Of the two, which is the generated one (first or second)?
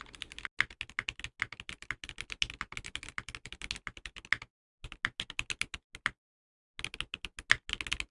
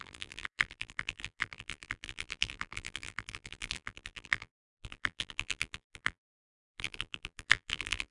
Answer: second